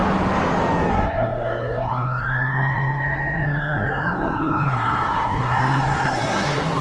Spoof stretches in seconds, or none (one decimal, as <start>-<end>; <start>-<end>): 0.9-6.8